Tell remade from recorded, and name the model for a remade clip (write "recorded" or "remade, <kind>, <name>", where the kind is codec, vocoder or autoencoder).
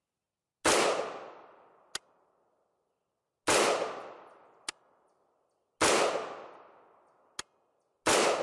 recorded